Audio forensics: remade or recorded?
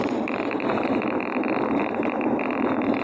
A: recorded